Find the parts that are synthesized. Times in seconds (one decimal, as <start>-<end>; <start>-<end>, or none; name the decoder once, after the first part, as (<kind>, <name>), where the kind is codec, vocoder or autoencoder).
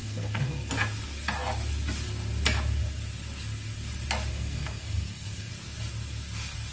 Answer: 0.0-0.7 (codec, SNAC); 4.3-5.5